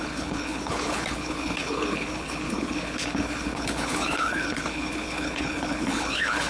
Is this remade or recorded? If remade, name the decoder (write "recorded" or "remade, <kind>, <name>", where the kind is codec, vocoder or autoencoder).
remade, codec, HILCodec